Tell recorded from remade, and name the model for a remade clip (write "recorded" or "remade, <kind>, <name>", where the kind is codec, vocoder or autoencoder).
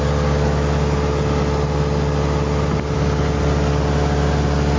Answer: recorded